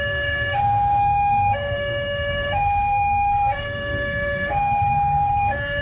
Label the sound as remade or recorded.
remade